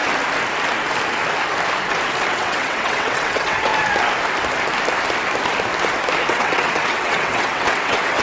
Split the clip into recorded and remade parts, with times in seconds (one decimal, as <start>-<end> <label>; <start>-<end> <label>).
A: 0.0-2.3 recorded; 2.3-3.7 remade; 3.7-6.2 recorded; 6.2-8.2 remade